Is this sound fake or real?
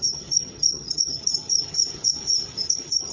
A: fake